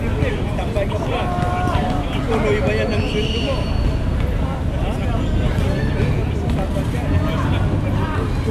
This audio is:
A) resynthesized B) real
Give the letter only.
B